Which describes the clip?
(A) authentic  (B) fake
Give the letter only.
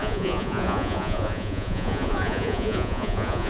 B